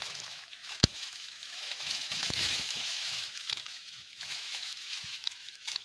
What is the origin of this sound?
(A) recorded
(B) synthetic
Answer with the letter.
B